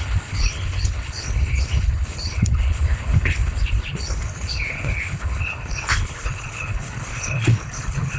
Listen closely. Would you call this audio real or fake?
fake